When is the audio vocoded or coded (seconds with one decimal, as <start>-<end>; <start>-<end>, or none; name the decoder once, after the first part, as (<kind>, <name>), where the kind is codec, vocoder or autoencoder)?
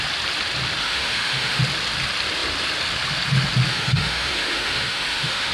0.8-1.6 (autoencoder, DAC-VAE); 3.7-5.5